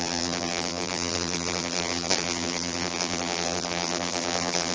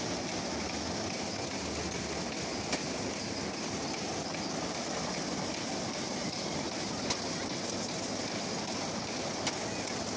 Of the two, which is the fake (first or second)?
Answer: first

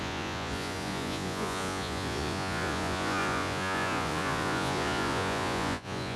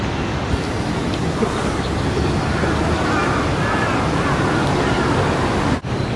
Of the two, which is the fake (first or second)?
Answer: first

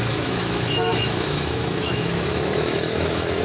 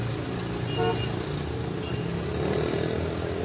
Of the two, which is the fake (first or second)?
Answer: first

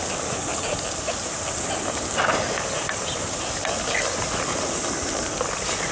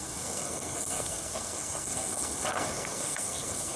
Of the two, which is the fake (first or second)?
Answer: second